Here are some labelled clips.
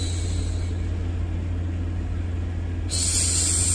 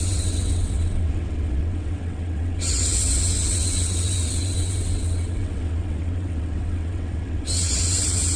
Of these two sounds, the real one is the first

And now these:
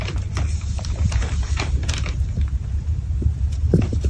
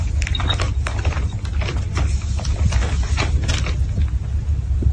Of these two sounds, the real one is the second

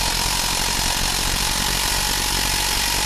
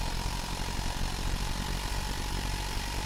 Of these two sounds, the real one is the first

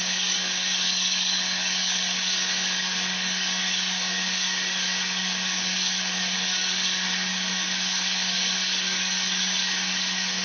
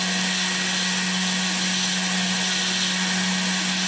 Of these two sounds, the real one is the second